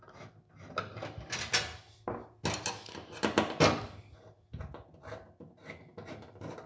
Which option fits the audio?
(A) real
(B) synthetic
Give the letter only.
A